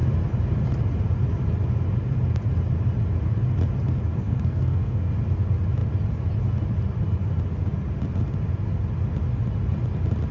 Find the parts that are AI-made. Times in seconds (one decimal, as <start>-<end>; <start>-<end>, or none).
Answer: 4.2-5.1